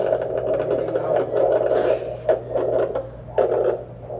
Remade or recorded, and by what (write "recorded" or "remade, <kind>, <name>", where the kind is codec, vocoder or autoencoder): recorded